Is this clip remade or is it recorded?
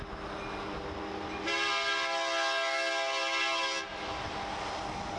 recorded